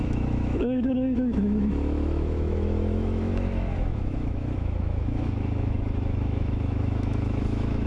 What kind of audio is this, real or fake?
fake